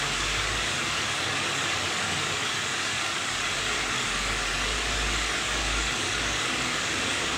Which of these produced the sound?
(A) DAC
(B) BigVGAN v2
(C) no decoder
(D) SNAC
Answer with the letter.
A